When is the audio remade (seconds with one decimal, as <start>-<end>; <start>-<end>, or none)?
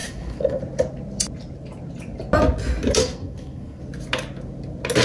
0.0-0.6; 3.0-3.8